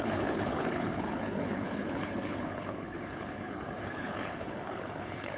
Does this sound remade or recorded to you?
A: remade